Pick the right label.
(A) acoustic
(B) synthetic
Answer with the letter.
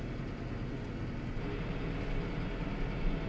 A